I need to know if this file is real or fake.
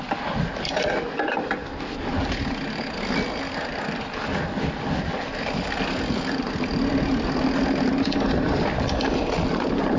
real